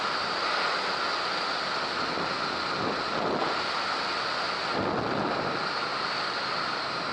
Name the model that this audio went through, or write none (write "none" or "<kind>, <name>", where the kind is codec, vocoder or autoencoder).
none